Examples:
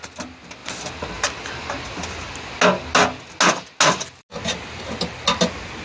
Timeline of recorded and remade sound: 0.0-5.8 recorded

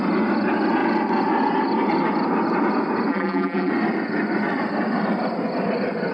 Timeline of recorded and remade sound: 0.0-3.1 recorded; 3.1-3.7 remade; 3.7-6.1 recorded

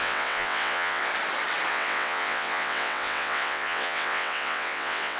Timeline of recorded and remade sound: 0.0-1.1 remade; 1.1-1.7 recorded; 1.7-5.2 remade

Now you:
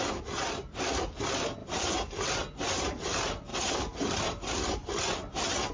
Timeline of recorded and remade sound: 0.0-1.6 recorded; 1.6-2.4 remade; 2.4-3.5 recorded; 3.5-4.6 remade; 4.6-5.7 recorded

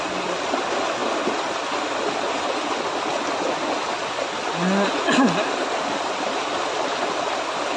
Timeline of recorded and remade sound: 0.0-7.8 recorded

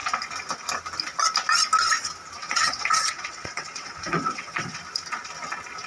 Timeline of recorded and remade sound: 0.0-2.4 recorded; 2.4-4.8 remade; 4.8-5.9 recorded

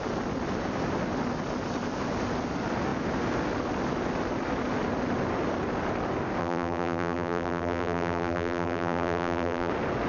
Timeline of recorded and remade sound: 0.0-6.4 recorded; 6.4-9.7 remade; 9.7-10.1 recorded